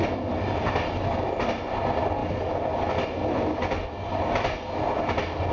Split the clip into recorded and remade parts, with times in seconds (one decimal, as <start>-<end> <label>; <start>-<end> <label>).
0.0-5.5 recorded